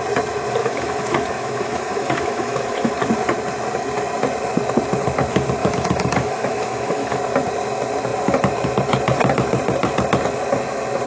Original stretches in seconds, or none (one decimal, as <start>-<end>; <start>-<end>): 0.0-0.6; 2.9-5.6; 7.2-11.1